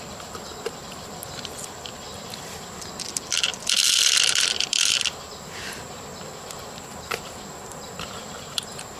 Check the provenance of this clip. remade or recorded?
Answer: remade